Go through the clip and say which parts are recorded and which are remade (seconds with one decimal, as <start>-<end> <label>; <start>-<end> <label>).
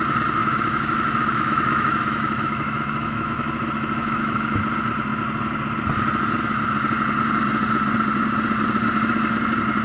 0.0-0.4 recorded; 0.4-4.6 remade; 4.6-9.8 recorded